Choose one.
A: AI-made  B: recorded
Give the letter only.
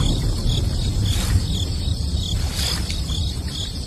B